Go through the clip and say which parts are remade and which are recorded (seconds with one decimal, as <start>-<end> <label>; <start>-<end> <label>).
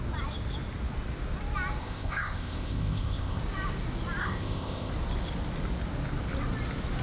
0.0-1.8 recorded; 1.8-3.4 remade; 3.4-4.2 recorded; 4.2-4.9 remade; 4.9-7.0 recorded